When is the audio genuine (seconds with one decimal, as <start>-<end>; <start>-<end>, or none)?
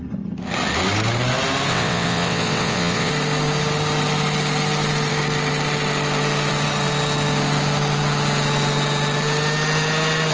0.0-1.7; 3.1-10.3